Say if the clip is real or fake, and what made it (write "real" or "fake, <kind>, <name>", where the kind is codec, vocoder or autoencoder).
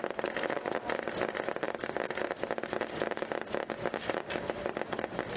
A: real